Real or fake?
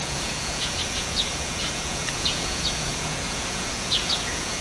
fake